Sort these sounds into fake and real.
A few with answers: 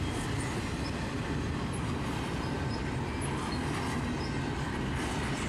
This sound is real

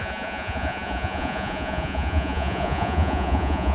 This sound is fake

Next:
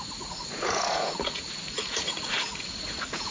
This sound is fake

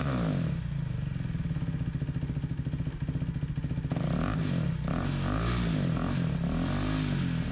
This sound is real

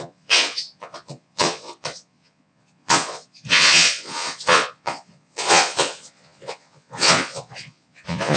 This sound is fake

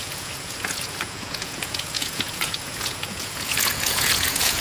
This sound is fake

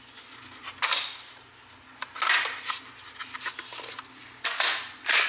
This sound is real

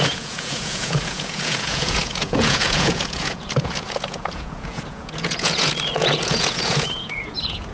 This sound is fake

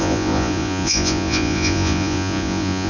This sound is fake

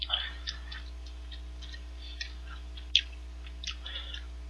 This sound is real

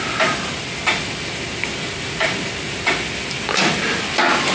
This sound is real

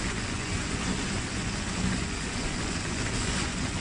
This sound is fake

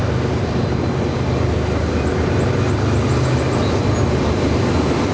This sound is real